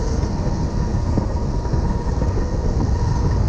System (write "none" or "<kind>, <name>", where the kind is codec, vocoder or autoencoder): codec, SNAC